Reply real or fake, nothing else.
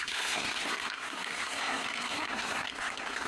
fake